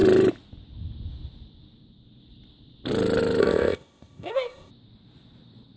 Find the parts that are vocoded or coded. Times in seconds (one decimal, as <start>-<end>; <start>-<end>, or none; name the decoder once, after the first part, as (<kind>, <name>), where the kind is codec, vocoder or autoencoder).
3.4-4.7 (codec, ZipCodec)